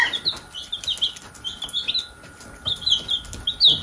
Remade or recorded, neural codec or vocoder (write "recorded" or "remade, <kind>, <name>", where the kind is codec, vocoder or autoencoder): recorded